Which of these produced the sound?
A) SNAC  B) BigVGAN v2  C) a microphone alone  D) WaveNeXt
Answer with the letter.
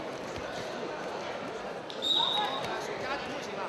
C